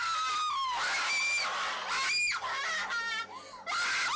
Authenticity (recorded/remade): recorded